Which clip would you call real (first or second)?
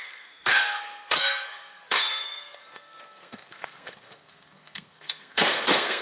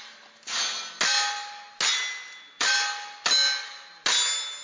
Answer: second